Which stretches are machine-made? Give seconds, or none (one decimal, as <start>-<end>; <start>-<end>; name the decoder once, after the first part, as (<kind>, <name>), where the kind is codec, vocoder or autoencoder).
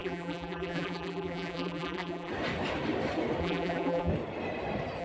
0.0-2.3 (vocoder, BigVGAN v2); 3.4-4.1